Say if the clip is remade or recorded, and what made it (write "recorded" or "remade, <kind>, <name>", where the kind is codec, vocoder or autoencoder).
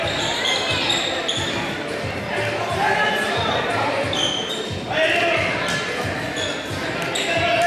recorded